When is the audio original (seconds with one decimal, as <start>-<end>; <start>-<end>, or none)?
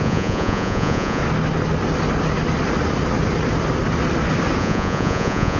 1.2-4.6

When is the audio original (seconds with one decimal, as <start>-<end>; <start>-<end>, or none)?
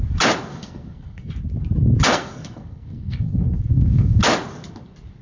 0.0-0.5; 1.3-2.1; 4.2-5.2